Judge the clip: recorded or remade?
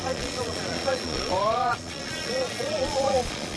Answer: remade